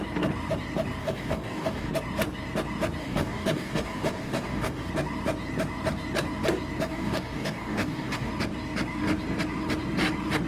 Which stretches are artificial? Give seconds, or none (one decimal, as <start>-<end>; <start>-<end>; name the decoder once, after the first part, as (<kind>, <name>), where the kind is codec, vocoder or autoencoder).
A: 1.0-1.9 (codec, DAC); 3.0-4.9; 6.9-8.3